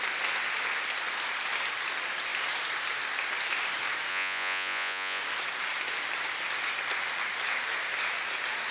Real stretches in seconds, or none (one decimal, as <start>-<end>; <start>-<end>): 0.0-4.1; 5.2-8.7